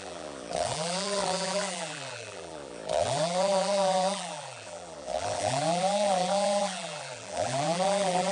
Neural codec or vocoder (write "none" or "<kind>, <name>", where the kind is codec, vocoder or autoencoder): vocoder, BigVGAN v2